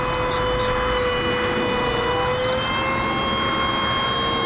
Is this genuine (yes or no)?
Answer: yes